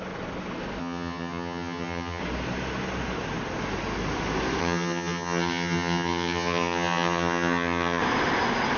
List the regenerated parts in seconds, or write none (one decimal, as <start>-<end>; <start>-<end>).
0.8-2.2; 4.6-8.0